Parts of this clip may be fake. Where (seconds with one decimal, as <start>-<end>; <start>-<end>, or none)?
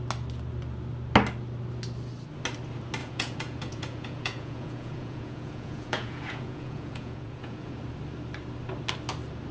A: 3.0-7.8